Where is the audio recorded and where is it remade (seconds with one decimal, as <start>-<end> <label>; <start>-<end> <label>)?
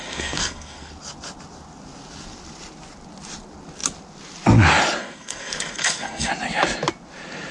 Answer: 0.0-0.9 remade; 0.9-5.0 recorded; 5.0-6.3 remade; 6.3-7.5 recorded